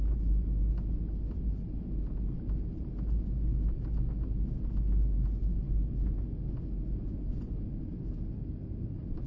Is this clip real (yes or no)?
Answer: yes